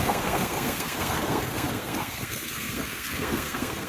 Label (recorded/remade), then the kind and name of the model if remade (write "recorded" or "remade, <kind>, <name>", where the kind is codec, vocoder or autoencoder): remade, codec, SNAC